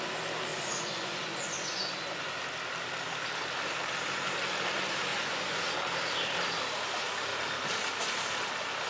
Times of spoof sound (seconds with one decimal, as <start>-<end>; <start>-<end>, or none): 0.5-2.4; 5.1-5.6